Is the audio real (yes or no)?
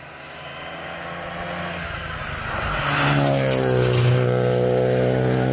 yes